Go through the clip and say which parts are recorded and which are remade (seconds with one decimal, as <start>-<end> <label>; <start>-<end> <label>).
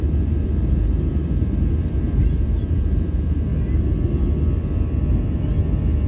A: 0.0-3.5 remade; 3.5-6.1 recorded